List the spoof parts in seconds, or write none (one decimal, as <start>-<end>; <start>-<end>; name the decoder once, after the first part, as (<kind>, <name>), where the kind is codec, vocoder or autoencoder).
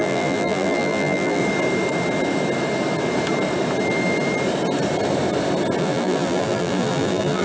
0.0-1.4 (vocoder, BigVGAN v2); 5.8-7.4